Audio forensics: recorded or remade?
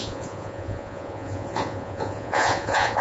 remade